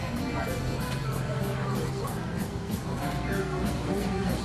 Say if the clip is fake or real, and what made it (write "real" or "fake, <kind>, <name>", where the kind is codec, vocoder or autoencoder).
fake, codec, SNAC